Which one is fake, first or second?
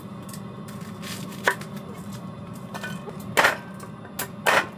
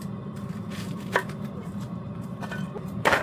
second